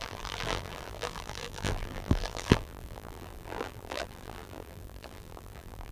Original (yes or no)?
no